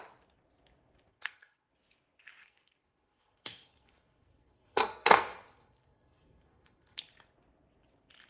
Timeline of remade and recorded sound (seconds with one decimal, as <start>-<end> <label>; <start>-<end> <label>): 0.0-1.1 recorded; 1.1-1.7 remade; 1.7-2.4 recorded; 2.4-7.0 remade; 7.0-8.3 recorded